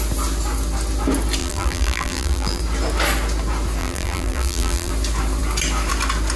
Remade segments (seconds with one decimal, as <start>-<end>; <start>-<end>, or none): 1.4-2.6; 3.8-4.9